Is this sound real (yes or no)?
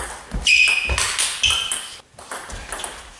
yes